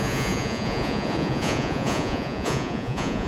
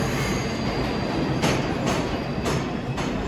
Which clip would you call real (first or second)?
second